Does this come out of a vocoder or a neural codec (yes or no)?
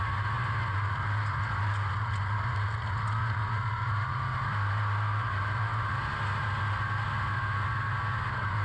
no